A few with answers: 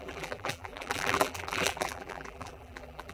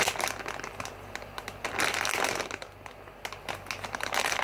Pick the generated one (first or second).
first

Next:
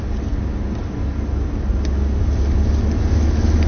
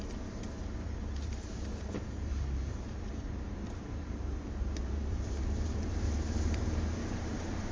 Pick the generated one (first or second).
second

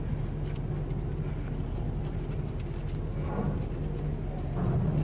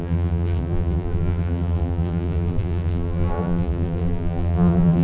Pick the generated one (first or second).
second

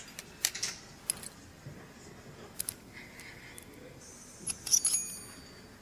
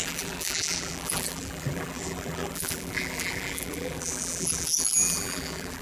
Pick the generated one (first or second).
second